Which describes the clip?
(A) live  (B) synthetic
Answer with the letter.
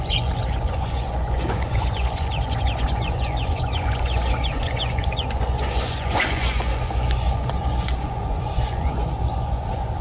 B